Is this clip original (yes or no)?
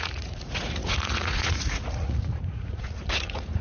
no